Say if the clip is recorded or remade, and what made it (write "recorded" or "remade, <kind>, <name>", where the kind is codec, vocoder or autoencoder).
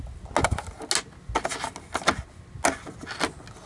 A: recorded